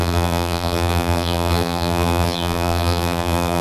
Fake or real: fake